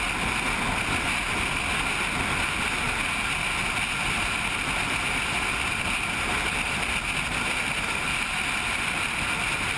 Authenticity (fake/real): real